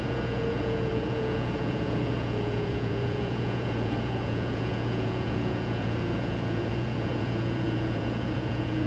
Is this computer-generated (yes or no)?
yes